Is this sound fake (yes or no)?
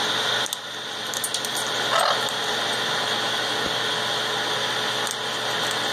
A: no